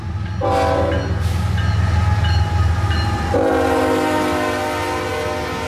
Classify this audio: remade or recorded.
recorded